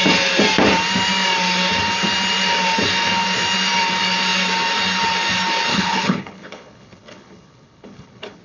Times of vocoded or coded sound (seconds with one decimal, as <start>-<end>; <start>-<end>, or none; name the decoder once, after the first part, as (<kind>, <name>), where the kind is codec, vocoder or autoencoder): 5.7-8.4 (codec, HILCodec)